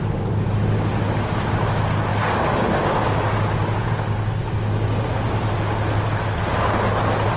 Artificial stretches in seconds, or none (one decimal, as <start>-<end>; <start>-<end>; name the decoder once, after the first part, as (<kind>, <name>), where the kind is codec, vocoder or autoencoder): none